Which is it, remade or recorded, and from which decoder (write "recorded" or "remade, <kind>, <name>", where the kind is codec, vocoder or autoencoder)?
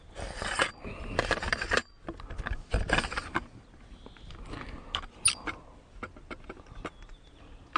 recorded